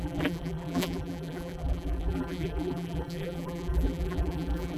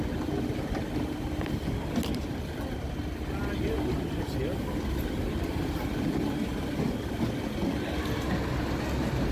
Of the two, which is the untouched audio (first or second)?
second